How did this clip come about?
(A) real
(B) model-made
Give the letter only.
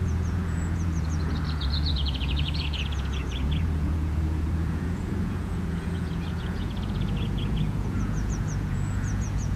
B